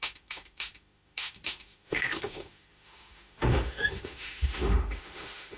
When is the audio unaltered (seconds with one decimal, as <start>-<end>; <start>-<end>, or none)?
none